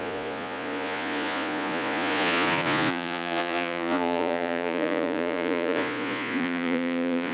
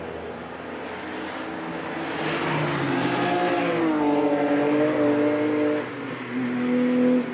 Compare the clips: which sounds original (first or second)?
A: second